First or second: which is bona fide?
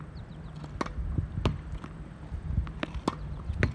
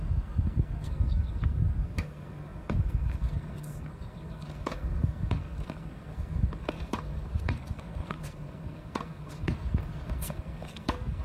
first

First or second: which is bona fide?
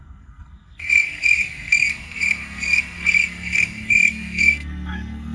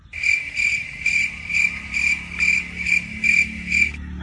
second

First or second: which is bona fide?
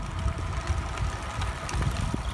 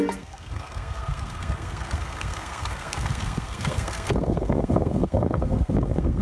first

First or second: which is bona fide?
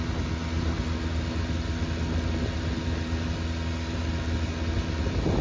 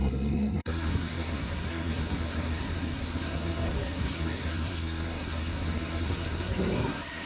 first